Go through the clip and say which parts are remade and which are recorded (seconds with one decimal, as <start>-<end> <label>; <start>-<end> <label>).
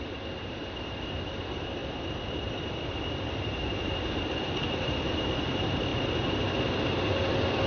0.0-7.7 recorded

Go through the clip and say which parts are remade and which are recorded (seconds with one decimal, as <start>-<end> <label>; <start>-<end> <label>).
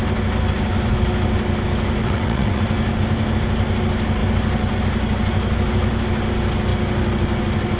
0.0-2.0 recorded; 2.0-2.6 remade; 2.6-7.8 recorded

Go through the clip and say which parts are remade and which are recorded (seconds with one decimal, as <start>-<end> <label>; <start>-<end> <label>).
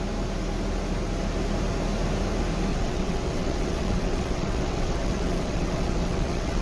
0.0-2.7 recorded; 2.7-6.6 remade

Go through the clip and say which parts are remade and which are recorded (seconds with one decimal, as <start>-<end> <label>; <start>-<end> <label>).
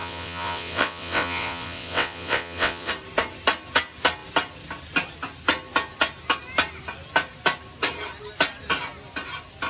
0.0-2.9 remade; 2.9-9.7 recorded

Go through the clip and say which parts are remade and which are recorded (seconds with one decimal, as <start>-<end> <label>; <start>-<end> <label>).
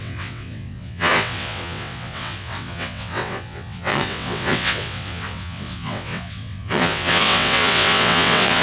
0.0-8.6 remade